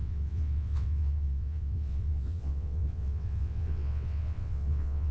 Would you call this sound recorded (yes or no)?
no